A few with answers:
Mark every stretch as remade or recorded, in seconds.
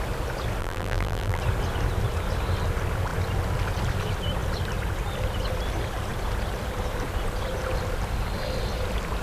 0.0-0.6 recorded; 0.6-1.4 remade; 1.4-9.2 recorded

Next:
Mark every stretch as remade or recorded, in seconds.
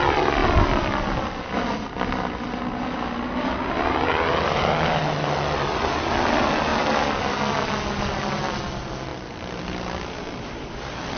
0.0-0.4 recorded; 0.4-0.9 remade; 0.9-11.2 recorded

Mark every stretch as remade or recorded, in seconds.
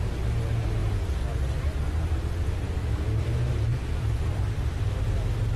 0.0-3.7 recorded; 3.7-4.8 remade; 4.8-5.6 recorded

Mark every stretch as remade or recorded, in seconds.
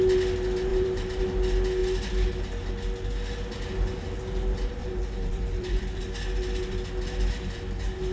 0.0-0.7 recorded; 0.7-1.2 remade; 1.2-4.8 recorded; 4.8-6.0 remade; 6.0-8.1 recorded